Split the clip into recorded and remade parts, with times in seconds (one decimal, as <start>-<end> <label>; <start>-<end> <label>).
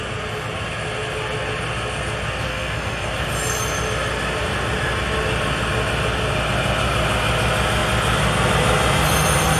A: 0.0-2.5 recorded; 2.5-3.1 remade; 3.1-9.6 recorded